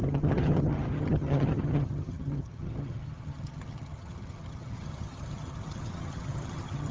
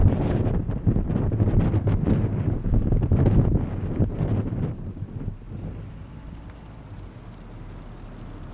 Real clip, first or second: second